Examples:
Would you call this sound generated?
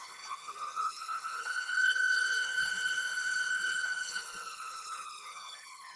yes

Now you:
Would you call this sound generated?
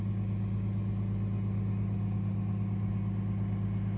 no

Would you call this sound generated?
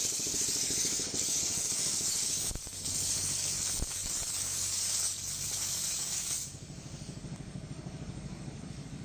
yes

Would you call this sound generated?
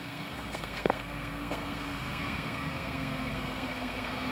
yes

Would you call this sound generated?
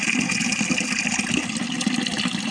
no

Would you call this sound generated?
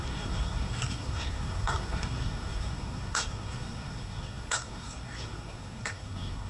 yes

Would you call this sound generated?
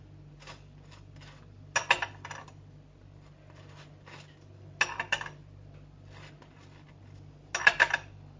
no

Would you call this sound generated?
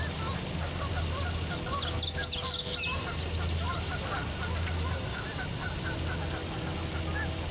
no